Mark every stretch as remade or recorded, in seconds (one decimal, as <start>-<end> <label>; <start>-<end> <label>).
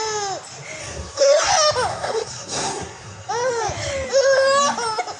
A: 0.0-0.8 recorded; 0.8-1.5 remade; 1.5-1.9 recorded; 1.9-3.3 remade; 3.3-5.2 recorded